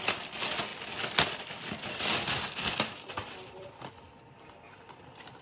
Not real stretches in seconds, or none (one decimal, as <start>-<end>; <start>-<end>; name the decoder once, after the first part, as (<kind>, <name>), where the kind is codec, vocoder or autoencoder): 0.7-3.9 (vocoder, BigVGAN v2)